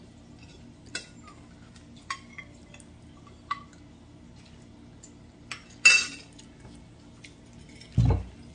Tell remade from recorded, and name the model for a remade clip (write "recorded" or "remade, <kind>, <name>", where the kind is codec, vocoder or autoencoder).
recorded